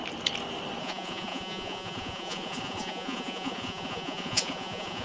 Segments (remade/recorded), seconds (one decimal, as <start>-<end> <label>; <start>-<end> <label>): 0.0-0.8 recorded; 0.8-5.0 remade